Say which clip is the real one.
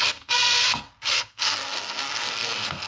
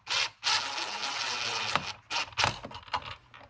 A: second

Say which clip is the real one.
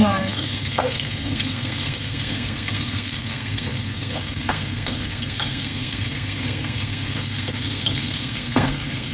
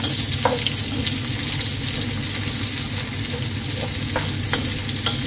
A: second